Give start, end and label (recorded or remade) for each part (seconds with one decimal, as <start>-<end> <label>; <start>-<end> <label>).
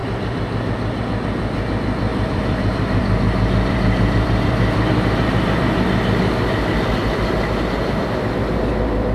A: 0.0-1.0 remade; 1.0-2.1 recorded; 2.1-5.6 remade; 5.6-7.0 recorded; 7.0-8.0 remade; 8.0-9.1 recorded